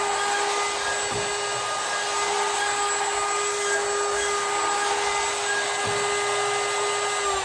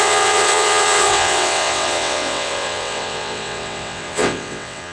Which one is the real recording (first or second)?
first